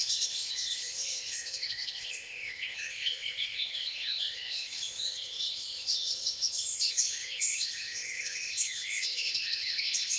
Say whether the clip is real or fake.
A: fake